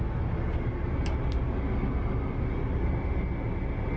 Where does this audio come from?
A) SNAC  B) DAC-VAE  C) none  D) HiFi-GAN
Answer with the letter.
C